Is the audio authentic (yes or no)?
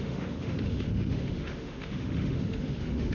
no